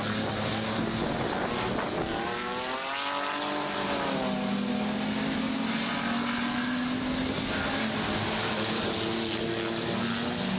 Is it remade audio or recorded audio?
recorded